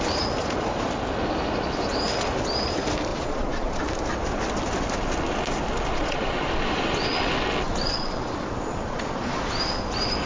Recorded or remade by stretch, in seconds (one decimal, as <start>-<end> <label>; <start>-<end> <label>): 0.0-0.4 recorded; 0.4-0.9 remade; 0.9-3.1 recorded; 3.1-3.8 remade; 3.8-5.9 recorded; 5.9-7.2 remade; 7.2-7.7 recorded; 7.7-9.4 remade; 9.4-10.3 recorded